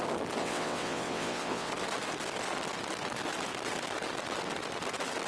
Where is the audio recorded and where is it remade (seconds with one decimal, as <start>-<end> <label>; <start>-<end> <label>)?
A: 0.0-0.4 recorded; 0.4-1.7 remade; 1.7-5.3 recorded